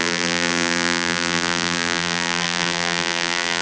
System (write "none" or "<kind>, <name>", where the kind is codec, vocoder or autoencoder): vocoder, BigVGAN v2